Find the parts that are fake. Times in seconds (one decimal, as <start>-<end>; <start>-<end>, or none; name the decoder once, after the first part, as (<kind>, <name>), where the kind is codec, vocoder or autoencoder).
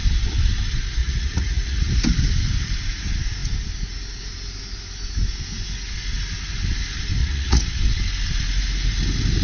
1.0-1.9 (vocoder, Vocos); 7.2-7.8